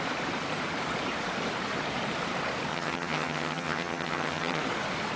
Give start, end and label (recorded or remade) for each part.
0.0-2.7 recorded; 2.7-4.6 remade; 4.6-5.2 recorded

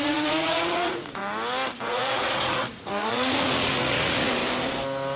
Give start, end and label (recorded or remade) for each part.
0.0-1.2 remade; 1.2-1.8 recorded; 1.8-4.4 remade; 4.4-5.2 recorded

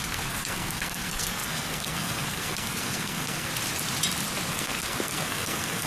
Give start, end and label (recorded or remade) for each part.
0.0-3.5 remade; 3.5-4.5 recorded; 4.5-5.9 remade